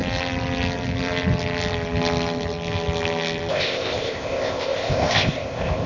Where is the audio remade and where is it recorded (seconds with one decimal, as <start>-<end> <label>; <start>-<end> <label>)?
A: 0.0-3.5 recorded; 3.5-5.9 remade